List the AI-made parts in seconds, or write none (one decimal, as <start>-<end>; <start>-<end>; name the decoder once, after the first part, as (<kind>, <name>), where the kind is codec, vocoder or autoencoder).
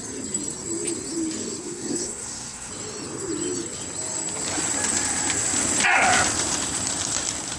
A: 1.6-2.7 (codec, SNAC)